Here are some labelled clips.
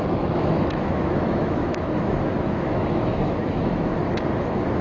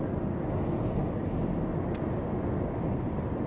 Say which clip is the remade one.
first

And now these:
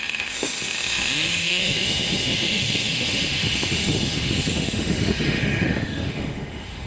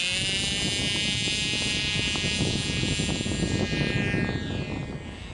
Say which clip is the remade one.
first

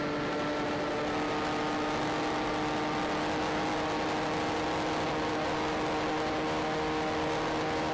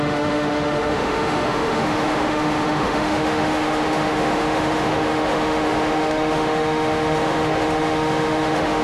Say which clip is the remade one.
second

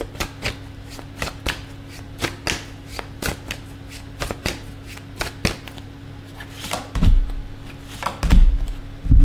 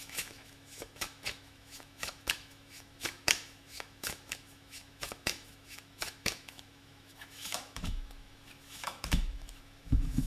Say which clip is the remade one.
second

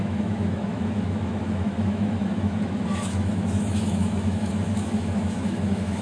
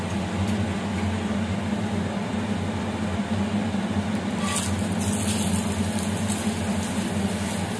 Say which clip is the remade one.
first